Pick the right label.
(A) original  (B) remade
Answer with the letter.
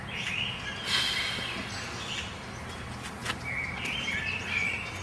A